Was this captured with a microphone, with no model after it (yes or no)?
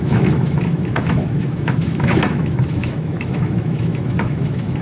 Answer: no